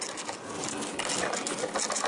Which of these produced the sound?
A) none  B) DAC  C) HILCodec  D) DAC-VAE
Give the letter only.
A